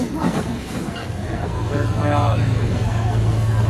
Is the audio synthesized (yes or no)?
yes